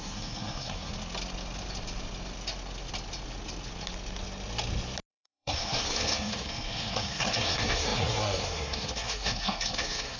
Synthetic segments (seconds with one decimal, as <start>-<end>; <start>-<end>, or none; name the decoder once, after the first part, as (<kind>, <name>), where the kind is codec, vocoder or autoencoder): 0.0-0.9 (codec, SNAC); 5.1-10.2